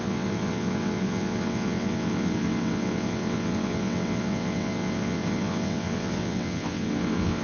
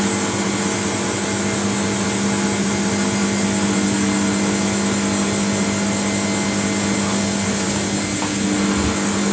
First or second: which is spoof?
first